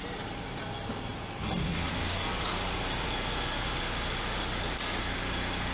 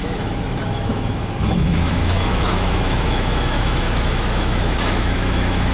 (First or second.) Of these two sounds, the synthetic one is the second